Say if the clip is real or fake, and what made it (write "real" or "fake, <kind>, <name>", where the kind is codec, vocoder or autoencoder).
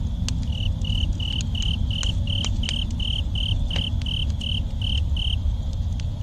real